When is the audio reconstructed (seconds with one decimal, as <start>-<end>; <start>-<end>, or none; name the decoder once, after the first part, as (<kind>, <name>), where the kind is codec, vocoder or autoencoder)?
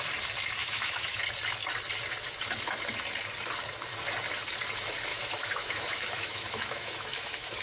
0.6-1.2 (autoencoder, DAC-VAE); 5.1-7.6